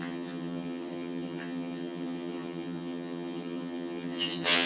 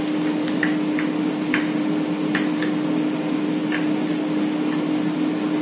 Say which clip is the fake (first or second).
first